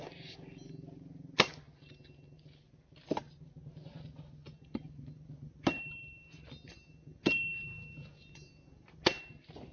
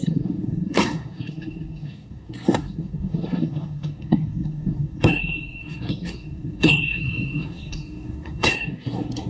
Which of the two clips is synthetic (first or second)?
second